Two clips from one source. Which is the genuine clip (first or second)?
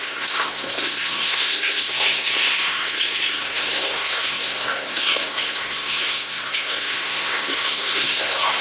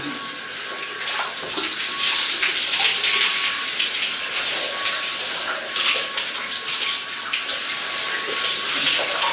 second